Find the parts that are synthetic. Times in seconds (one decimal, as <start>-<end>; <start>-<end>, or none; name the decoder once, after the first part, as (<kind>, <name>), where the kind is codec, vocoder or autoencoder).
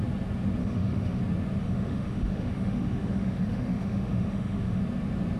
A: 0.6-1.2 (autoencoder, DAC-VAE); 1.6-4.8